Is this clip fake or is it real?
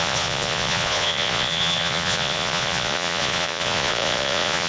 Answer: fake